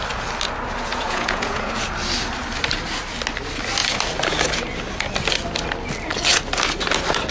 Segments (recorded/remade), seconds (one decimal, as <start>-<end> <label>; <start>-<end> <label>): 0.0-0.9 recorded; 0.9-1.7 remade; 1.7-7.3 recorded